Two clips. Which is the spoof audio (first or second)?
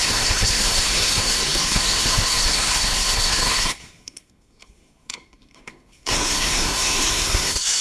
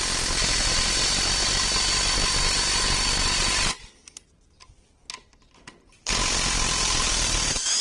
first